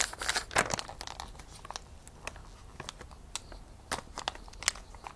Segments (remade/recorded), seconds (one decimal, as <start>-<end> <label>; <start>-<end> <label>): 0.0-5.2 recorded

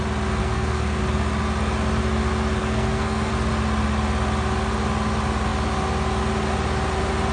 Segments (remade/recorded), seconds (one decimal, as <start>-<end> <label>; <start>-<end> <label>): 0.0-0.4 recorded; 0.4-1.0 remade; 1.0-2.6 recorded; 2.6-3.3 remade; 3.3-7.3 recorded

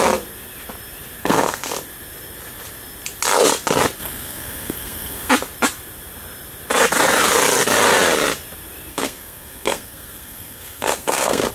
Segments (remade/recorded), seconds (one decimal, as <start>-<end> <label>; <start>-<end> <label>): 0.0-1.2 recorded; 1.2-1.7 remade; 1.7-4.0 recorded; 4.0-5.3 remade; 5.3-8.9 recorded; 8.9-11.5 remade

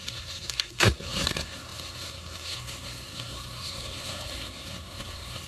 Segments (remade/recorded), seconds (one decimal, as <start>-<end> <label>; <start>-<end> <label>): 0.0-5.5 remade

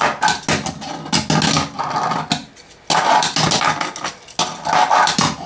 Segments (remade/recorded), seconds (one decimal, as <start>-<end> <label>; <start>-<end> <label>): 0.0-5.5 recorded

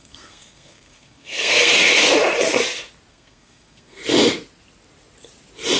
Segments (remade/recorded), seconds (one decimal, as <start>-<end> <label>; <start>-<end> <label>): 0.0-1.7 remade; 1.7-3.1 recorded; 3.1-4.0 remade; 4.0-5.8 recorded

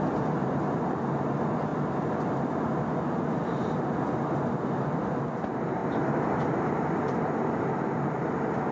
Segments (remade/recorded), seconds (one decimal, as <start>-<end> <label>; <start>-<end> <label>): 0.0-8.7 recorded